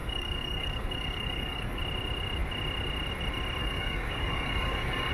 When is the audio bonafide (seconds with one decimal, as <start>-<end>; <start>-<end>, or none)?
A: 1.8-3.6